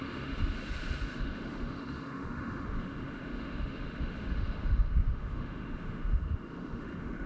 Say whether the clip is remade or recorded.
remade